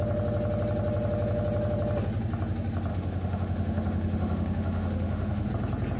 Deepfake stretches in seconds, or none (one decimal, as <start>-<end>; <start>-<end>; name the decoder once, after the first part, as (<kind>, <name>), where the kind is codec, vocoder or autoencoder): 2.9-5.5 (autoencoder, DAC-VAE)